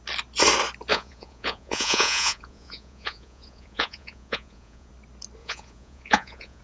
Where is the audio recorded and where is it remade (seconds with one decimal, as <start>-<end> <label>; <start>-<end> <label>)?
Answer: 0.0-0.9 recorded; 0.9-4.9 remade; 4.9-5.4 recorded; 5.4-6.6 remade